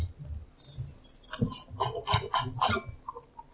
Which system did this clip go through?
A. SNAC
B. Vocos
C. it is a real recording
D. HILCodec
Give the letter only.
C